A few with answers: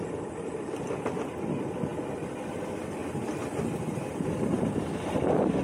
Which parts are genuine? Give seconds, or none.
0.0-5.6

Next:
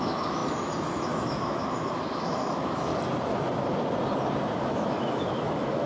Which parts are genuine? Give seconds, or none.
2.9-4.6

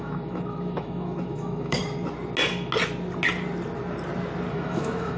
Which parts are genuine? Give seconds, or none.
1.8-4.5

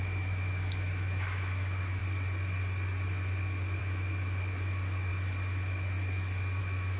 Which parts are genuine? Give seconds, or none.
2.0-3.8; 5.1-6.6